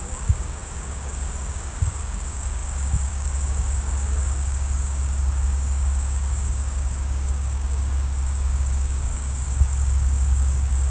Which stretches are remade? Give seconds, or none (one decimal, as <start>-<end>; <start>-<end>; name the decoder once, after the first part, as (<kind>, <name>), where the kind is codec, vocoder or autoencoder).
0.0-10.9 (codec, DAC)

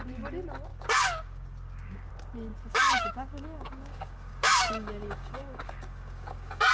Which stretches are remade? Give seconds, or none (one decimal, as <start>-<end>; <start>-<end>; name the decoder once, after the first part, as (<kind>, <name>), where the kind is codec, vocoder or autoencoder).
0.7-2.1 (codec, DAC); 2.5-6.7